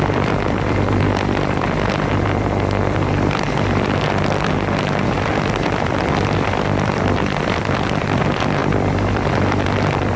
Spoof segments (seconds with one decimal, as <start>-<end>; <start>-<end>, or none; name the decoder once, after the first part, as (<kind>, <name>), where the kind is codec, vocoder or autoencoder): 0.0-10.2 (vocoder, BigVGAN v2)